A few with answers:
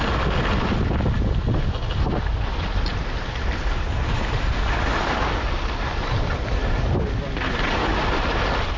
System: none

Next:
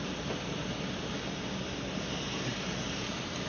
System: none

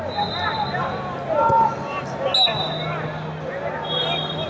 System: none